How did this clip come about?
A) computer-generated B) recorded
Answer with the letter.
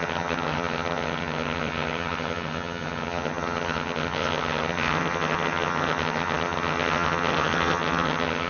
A